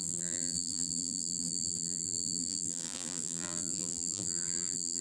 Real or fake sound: fake